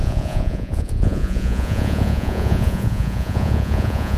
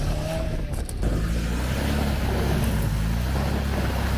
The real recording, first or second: second